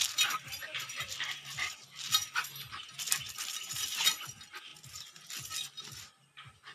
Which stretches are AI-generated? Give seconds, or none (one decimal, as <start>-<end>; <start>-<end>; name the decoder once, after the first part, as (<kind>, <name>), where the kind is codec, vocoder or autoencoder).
none